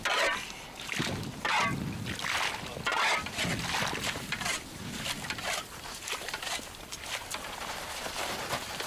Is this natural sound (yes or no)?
yes